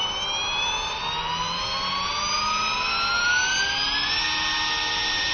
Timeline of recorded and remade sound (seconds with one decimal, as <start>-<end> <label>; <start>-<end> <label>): 0.0-5.3 recorded